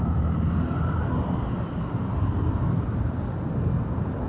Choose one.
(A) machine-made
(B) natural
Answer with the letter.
B